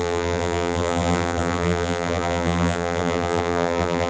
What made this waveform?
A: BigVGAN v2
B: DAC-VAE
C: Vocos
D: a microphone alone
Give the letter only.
A